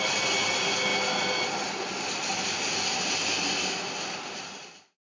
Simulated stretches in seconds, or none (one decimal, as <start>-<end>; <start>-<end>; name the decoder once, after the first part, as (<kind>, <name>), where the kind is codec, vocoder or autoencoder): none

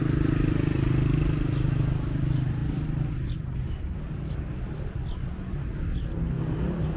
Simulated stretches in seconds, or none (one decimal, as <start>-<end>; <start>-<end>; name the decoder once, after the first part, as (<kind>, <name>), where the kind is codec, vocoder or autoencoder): none

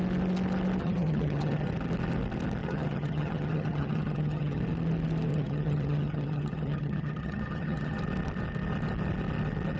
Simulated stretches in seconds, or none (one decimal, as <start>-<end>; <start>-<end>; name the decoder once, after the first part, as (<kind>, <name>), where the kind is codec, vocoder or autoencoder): 0.8-1.7 (vocoder, HiFi-GAN); 2.6-4.6; 5.3-8.0

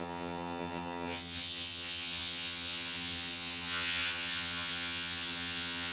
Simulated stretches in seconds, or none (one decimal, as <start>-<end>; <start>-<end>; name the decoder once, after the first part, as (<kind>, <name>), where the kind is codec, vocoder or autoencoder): 0.0-5.9 (vocoder, HiFi-GAN)

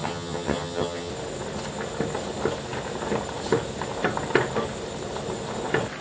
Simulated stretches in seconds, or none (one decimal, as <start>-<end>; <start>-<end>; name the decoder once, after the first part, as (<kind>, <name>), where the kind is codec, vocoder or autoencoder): 0.0-1.1 (vocoder, HiFi-GAN)